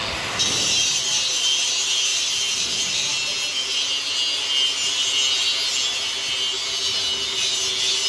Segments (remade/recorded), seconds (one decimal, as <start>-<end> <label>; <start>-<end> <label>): 0.0-8.1 recorded